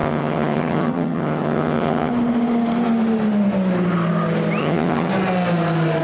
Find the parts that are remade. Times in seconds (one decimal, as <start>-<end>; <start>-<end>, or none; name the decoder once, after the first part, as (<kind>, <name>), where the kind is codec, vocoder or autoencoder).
0.0-2.1 (vocoder, HiFi-GAN); 4.6-5.1

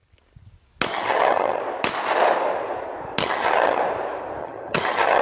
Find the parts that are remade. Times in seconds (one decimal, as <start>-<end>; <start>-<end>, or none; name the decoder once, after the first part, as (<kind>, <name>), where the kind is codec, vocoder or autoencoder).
0.9-1.6 (vocoder, HiFi-GAN); 3.2-3.8; 4.4-5.2

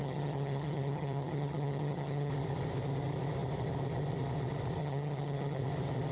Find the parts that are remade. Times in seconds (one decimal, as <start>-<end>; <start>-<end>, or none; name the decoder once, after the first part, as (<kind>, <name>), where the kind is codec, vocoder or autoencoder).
0.0-2.3 (vocoder, HiFi-GAN); 4.8-5.6

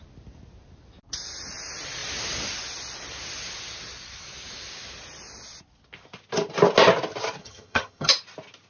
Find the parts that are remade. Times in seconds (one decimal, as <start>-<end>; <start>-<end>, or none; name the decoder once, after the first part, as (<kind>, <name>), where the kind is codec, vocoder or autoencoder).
7.4-8.1 (vocoder, HiFi-GAN)

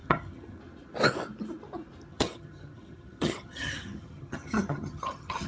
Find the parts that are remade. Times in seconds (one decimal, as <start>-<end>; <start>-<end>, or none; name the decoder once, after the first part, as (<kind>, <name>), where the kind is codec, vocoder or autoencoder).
0.0-0.6 (vocoder, HiFi-GAN); 2.1-5.5